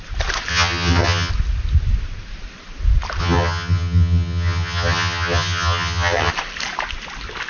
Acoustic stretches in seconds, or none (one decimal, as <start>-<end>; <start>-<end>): 0.0-0.5; 1.3-3.2; 6.3-7.5